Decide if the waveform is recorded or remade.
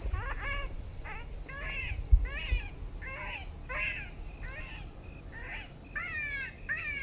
recorded